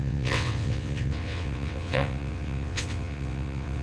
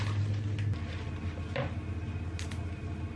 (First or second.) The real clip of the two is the second